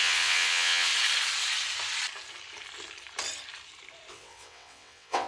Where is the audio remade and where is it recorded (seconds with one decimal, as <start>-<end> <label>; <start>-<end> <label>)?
0.0-0.9 remade; 0.9-4.1 recorded; 4.1-5.3 remade